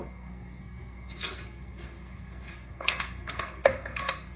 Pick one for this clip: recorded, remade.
remade